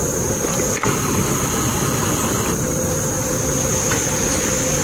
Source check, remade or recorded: recorded